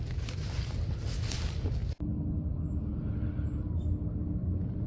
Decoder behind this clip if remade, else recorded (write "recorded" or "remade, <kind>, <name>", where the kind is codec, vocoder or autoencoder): recorded